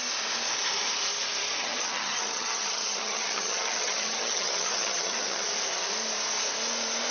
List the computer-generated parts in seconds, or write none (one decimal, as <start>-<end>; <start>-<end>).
1.6-5.5